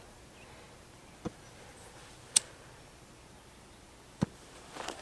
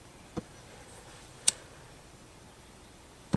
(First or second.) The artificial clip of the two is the second